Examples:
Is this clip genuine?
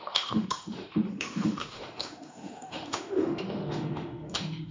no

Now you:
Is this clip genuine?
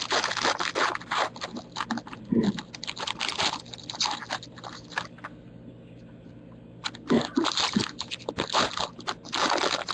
yes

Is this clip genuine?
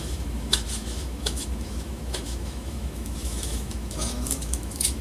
no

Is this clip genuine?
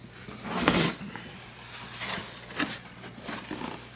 yes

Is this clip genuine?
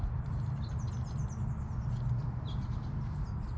yes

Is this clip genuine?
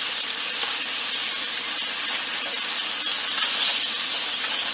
yes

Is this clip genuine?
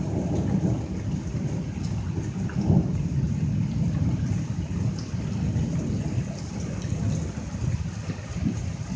yes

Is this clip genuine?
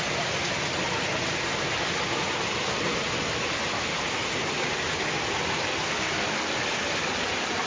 yes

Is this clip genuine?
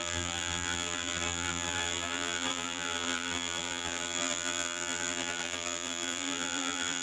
no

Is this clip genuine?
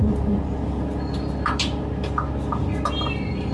yes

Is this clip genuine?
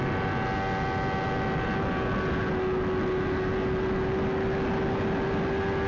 yes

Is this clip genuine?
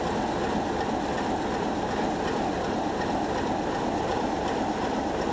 yes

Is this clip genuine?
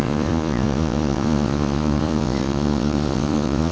no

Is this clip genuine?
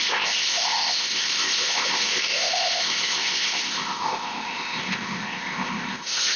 no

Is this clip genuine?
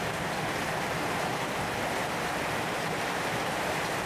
yes